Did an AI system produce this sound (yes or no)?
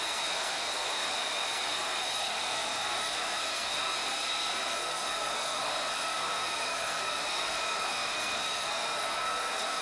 yes